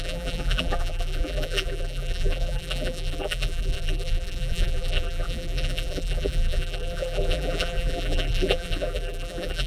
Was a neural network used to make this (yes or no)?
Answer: yes